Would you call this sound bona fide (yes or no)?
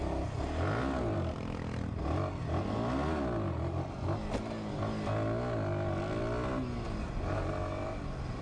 yes